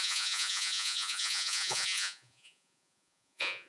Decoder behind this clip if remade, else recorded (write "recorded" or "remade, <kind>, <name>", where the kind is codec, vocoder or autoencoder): remade, vocoder, Vocos